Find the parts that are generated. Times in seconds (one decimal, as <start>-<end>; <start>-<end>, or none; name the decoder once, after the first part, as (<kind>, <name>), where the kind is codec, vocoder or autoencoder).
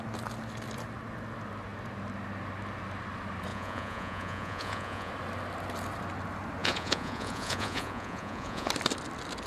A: 3.5-5.1 (vocoder, Vocos); 6.6-8.7